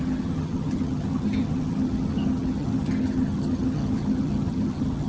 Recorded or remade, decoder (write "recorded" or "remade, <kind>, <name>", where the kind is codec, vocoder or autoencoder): remade, vocoder, HiFi-GAN